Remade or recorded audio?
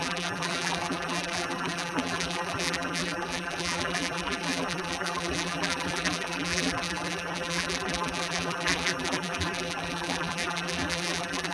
remade